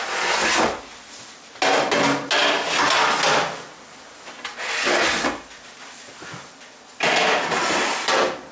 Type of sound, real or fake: real